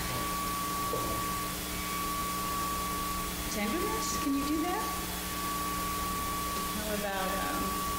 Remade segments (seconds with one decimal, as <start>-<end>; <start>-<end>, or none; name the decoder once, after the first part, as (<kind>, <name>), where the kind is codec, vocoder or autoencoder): none